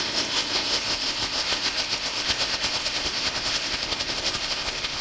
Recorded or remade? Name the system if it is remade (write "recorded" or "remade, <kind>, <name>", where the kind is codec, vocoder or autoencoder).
remade, codec, ZipCodec